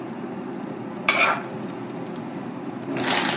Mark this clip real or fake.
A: real